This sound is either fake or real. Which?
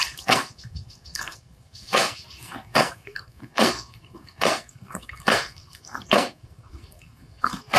fake